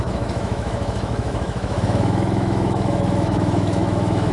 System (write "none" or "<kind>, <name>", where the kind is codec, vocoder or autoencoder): autoencoder, DAC-VAE